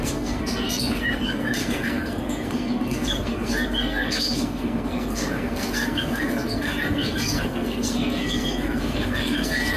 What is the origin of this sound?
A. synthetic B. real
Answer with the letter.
A